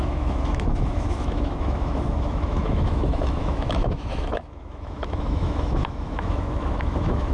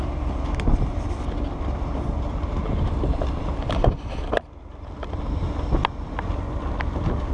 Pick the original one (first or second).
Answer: second